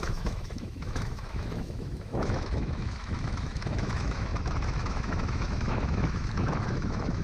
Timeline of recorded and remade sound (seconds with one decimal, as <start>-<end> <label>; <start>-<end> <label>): 0.0-7.2 remade